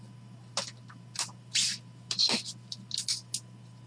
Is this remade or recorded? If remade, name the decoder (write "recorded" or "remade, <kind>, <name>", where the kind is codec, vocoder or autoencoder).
recorded